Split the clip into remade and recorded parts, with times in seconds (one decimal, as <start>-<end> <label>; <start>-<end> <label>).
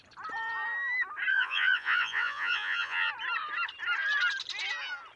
0.0-1.3 recorded; 1.3-3.1 remade; 3.1-5.2 recorded